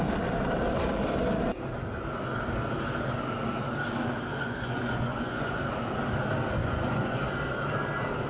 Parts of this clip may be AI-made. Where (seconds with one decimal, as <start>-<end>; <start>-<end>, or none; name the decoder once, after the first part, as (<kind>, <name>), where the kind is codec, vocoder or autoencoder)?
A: 4.3-5.6 (vocoder, Vocos); 6.6-7.2